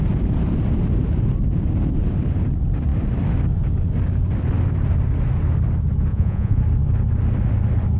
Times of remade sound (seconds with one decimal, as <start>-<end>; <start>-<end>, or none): 6.1-6.6

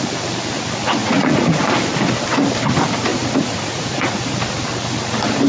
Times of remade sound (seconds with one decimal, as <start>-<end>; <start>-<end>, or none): 1.0-1.6; 3.1-4.2

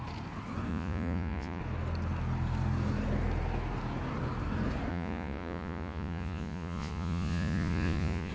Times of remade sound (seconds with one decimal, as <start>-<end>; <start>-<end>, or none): 0.7-1.6; 4.9-8.3

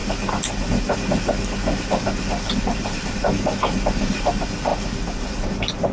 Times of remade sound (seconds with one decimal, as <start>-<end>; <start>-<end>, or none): none